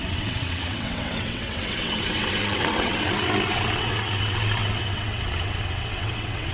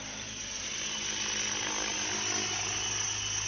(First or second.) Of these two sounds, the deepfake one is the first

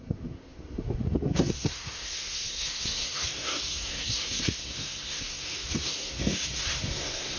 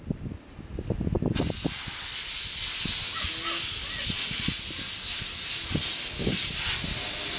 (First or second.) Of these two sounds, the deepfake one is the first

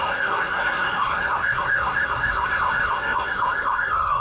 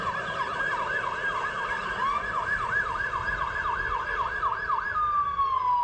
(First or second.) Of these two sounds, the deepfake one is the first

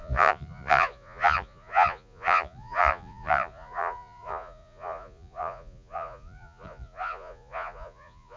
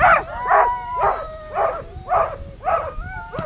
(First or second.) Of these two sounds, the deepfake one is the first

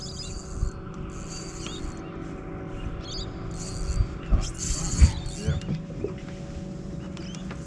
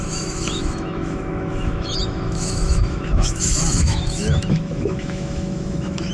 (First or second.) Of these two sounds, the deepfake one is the second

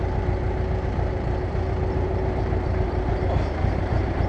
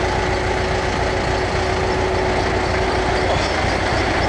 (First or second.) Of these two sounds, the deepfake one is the first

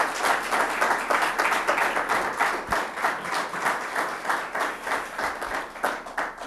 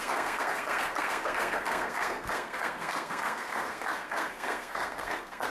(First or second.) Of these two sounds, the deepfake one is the second